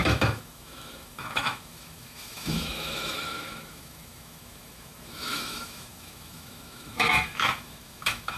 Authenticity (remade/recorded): remade